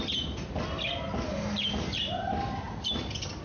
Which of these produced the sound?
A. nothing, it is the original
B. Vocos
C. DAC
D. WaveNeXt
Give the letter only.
A